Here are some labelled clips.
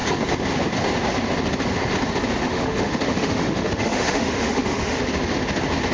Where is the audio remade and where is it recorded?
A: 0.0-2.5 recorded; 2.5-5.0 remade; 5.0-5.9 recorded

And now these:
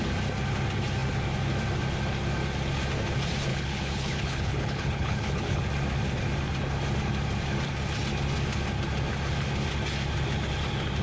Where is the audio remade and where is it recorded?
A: 0.0-3.5 recorded; 3.5-5.6 remade; 5.6-11.0 recorded

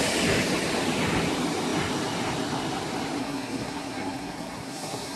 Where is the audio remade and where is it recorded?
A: 0.0-3.2 recorded; 3.2-5.2 remade

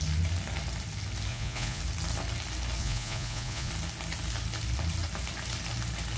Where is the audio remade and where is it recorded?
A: 0.0-1.3 recorded; 1.3-1.8 remade; 1.8-2.8 recorded; 2.8-3.7 remade; 3.7-6.2 recorded

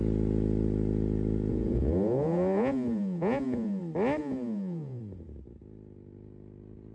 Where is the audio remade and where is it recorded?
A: 0.0-1.5 recorded; 1.5-3.8 remade; 3.8-4.2 recorded; 4.2-5.0 remade; 5.0-6.9 recorded

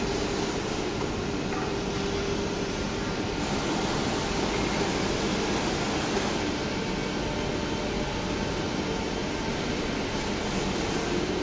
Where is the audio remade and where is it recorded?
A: 0.0-11.4 recorded